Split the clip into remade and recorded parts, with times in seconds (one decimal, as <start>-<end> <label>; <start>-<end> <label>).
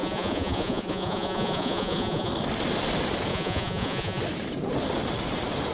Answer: 0.0-2.3 remade; 2.3-3.3 recorded; 3.3-4.2 remade; 4.2-5.7 recorded